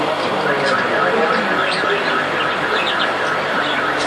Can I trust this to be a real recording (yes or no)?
yes